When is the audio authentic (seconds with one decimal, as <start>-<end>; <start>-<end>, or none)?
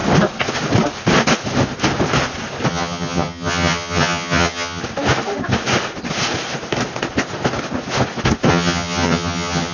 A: 0.0-2.7; 4.8-8.5